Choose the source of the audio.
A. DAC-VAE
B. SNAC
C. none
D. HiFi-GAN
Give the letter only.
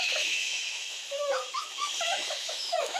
A